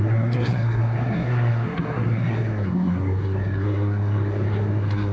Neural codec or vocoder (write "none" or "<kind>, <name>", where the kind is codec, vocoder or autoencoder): codec, SNAC